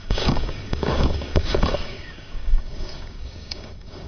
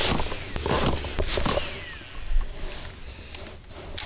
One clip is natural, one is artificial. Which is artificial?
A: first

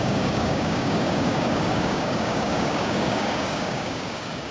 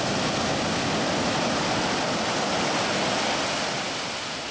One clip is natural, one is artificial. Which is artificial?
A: first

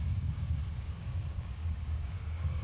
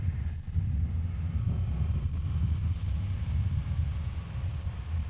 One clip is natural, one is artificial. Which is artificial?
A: first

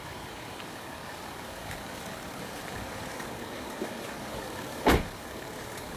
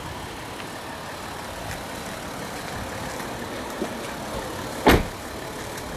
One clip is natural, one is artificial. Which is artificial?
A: first